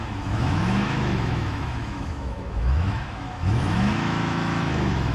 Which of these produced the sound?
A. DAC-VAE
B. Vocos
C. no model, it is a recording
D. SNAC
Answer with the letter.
A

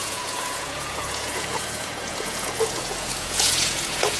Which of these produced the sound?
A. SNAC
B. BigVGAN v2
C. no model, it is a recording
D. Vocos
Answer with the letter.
D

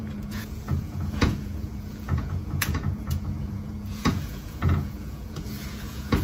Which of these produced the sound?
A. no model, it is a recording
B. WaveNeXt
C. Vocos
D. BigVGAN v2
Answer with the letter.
C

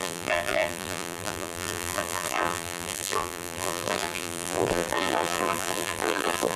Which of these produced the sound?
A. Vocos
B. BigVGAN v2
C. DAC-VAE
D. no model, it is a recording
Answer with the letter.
B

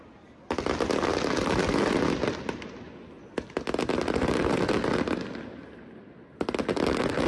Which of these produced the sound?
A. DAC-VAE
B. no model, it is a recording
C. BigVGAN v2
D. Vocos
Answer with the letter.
B